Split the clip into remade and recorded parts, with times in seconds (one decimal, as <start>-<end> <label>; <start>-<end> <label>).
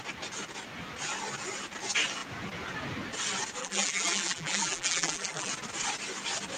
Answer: 0.0-3.6 recorded; 3.6-5.5 remade; 5.5-6.6 recorded